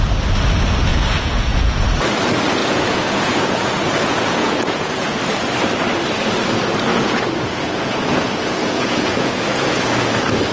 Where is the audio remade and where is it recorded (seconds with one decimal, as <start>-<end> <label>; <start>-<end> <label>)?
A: 0.0-0.9 recorded; 0.9-1.8 remade; 1.8-2.6 recorded; 2.6-5.2 remade; 5.2-6.9 recorded; 6.9-10.1 remade; 10.1-10.5 recorded